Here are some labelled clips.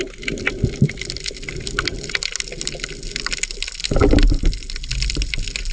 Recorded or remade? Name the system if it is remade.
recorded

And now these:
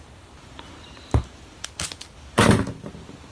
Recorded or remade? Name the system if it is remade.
recorded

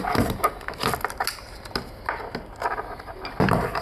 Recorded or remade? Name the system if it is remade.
recorded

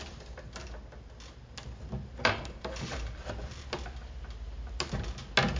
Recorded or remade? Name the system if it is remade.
recorded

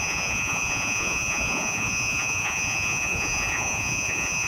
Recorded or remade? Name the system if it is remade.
remade, vocoder, Vocos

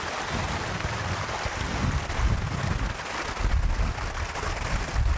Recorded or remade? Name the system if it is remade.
recorded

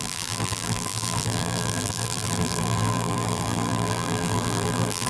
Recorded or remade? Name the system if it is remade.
remade, vocoder, BigVGAN v2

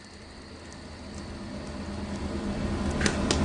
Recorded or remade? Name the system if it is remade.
recorded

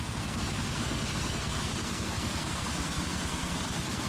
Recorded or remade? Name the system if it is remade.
remade, codec, SNAC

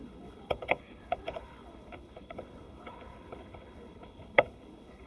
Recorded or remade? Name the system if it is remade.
remade, codec, HILCodec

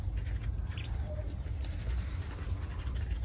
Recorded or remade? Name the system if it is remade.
recorded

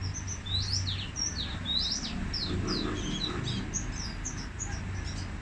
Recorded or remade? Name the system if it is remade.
recorded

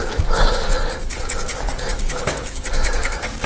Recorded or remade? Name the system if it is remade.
remade, codec, DAC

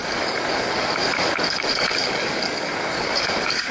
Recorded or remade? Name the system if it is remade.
remade, codec, DAC